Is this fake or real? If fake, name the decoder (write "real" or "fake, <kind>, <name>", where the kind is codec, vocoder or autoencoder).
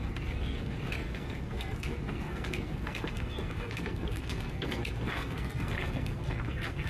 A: fake, codec, SNAC